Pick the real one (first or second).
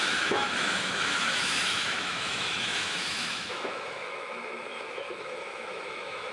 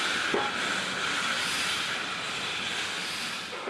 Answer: second